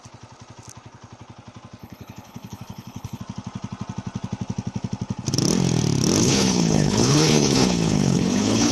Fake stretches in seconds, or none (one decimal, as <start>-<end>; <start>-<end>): 1.8-3.2; 6.2-8.7